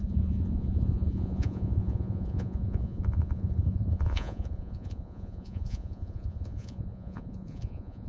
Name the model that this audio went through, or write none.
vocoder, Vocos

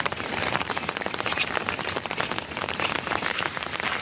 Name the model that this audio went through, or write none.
vocoder, BigVGAN v2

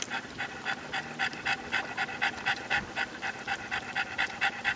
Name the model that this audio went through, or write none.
none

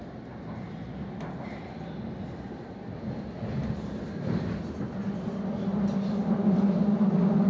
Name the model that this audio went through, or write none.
none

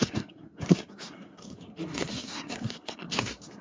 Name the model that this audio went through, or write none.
codec, SNAC